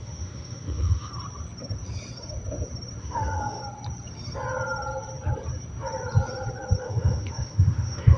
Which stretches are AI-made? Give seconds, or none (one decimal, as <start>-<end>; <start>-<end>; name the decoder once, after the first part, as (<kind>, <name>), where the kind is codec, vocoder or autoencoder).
0.0-1.1 (autoencoder, DAC-VAE); 3.0-3.6; 6.8-8.2